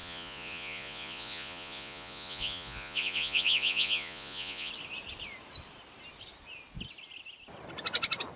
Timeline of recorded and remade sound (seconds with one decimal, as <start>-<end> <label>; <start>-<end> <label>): 0.0-4.7 remade; 4.7-8.4 recorded